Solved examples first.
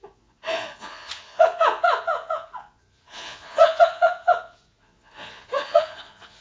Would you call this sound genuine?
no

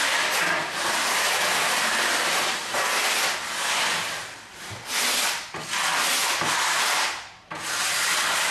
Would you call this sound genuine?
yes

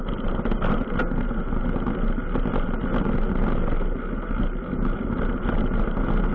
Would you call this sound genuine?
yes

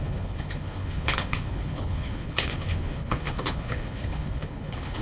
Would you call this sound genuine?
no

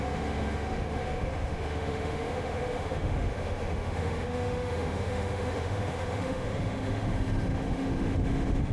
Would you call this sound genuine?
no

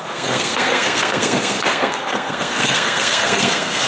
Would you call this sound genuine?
no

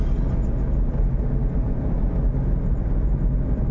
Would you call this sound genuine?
yes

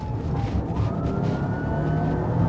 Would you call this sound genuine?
yes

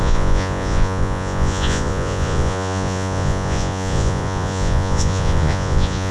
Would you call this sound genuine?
no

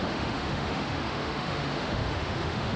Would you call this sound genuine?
no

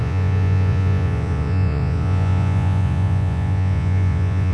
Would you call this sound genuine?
no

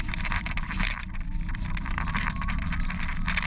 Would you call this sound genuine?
no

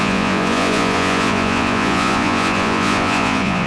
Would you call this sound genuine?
no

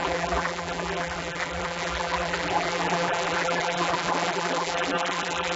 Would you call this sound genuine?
no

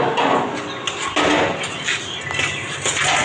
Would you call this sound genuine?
yes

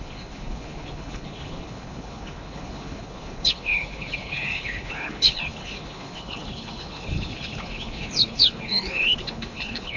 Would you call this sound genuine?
no